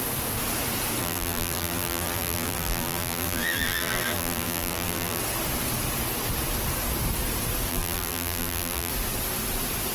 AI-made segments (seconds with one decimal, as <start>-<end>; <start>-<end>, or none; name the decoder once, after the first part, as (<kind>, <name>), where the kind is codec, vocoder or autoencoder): 1.0-5.2 (vocoder, BigVGAN v2); 7.7-8.9